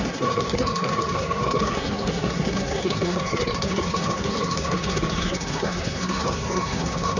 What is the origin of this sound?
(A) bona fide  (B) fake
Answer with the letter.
B